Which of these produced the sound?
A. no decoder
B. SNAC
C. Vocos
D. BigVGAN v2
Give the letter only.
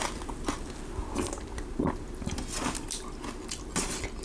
A